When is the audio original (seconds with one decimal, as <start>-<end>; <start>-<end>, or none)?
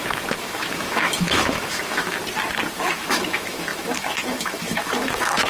2.2-2.9